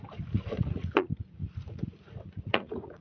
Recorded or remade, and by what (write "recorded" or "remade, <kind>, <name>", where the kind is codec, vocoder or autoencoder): remade, vocoder, Vocos